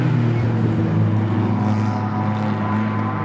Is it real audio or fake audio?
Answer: real